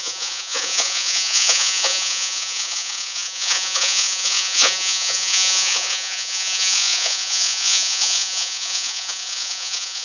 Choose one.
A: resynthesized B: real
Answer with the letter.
A